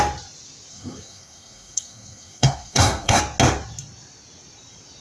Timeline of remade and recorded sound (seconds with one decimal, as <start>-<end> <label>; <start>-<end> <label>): 0.0-0.7 recorded; 0.7-3.2 remade; 3.2-5.0 recorded